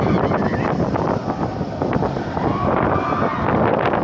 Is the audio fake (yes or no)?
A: no